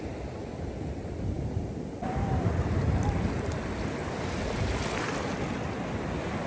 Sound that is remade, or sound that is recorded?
recorded